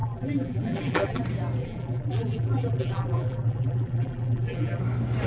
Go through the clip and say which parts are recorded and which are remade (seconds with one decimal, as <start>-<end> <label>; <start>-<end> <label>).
0.0-1.2 remade; 1.2-1.6 recorded; 1.6-4.8 remade; 4.8-5.3 recorded